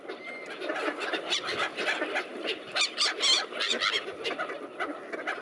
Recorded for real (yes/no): yes